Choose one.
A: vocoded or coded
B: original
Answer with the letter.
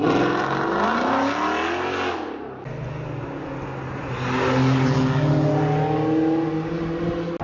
B